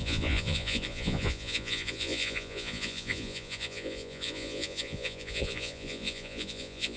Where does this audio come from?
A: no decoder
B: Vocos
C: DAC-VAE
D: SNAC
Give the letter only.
B